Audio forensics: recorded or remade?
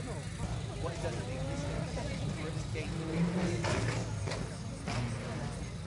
recorded